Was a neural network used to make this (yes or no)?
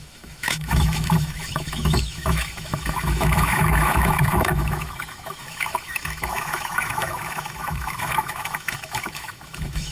yes